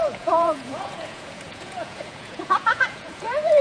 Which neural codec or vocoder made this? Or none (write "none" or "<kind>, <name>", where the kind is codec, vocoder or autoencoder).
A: vocoder, Vocos